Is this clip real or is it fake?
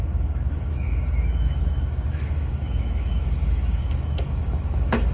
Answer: fake